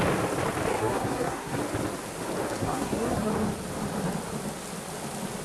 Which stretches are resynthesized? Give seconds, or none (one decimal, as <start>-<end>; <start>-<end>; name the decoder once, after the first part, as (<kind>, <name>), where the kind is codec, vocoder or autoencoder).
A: 0.7-1.6 (codec, SNAC); 2.6-3.3